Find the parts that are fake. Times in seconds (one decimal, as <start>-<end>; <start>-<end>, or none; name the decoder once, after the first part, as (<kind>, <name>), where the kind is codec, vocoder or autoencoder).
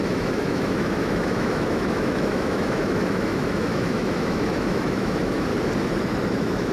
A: 0.0-5.5 (autoencoder, DAC-VAE); 6.3-6.7